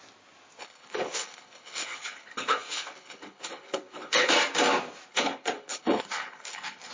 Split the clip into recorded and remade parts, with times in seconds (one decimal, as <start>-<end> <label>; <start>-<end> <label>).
0.0-0.6 recorded; 0.6-4.3 remade; 4.3-5.1 recorded; 5.1-6.9 remade